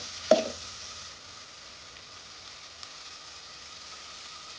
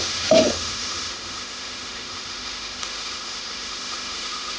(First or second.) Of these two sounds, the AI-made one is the second